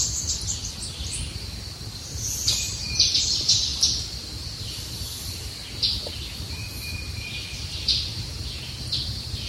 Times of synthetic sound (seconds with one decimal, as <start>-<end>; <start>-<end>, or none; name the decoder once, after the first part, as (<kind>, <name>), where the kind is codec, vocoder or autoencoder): none